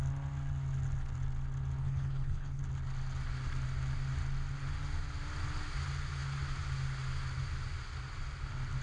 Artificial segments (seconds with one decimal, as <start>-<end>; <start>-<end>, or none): 1.8-2.6